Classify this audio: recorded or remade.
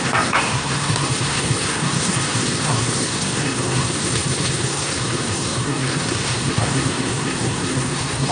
remade